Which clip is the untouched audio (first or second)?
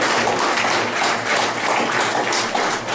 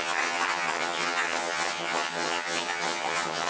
first